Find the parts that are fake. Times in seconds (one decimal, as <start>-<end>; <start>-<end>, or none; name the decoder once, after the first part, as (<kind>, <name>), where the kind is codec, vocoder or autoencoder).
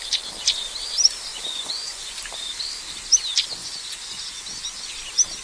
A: 1.3-2.2 (vocoder, Vocos); 3.6-4.4